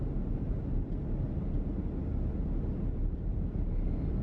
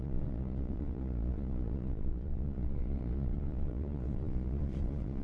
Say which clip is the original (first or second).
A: first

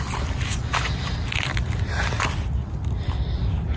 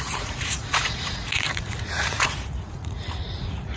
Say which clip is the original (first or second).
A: first